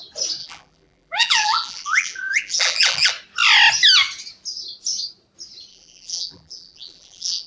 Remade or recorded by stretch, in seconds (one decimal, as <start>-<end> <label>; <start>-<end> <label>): 0.0-0.4 recorded; 0.4-3.1 remade; 3.1-5.7 recorded; 5.7-7.5 remade

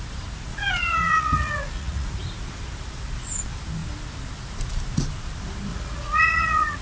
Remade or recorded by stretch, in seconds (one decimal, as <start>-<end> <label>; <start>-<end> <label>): 0.0-0.5 recorded; 0.5-2.1 remade; 2.1-5.7 recorded; 5.7-6.8 remade